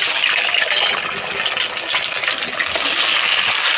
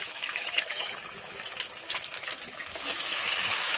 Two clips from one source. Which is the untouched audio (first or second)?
first